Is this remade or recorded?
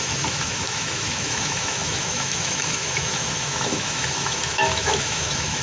remade